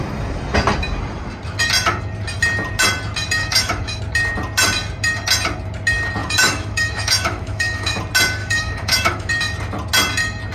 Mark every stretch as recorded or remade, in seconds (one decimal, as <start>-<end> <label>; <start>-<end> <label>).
0.0-3.4 recorded; 3.4-4.0 remade; 4.0-6.2 recorded; 6.2-8.0 remade; 8.0-8.4 recorded; 8.4-9.3 remade; 9.3-10.5 recorded